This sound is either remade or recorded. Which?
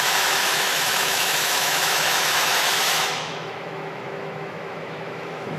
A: remade